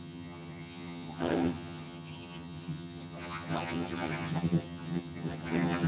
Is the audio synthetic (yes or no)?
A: yes